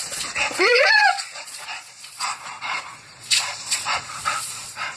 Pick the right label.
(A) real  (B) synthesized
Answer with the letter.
B